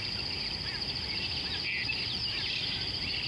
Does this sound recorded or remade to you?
recorded